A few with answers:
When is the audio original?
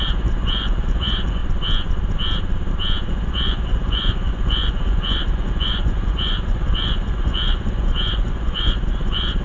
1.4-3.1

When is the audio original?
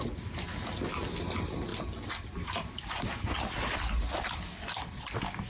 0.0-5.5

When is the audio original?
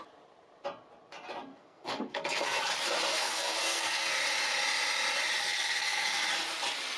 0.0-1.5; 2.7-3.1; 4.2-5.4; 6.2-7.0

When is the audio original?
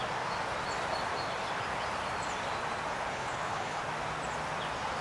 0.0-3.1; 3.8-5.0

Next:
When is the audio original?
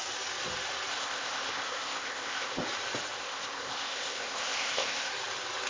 0.0-0.9; 2.6-3.2; 5.1-5.7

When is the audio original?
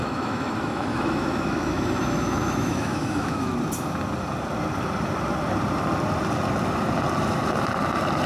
3.5-8.3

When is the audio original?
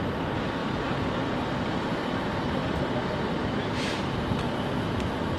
0.0-0.6; 1.8-2.6; 4.0-5.4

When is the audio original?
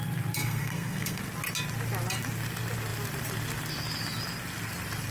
0.0-0.4; 1.2-5.1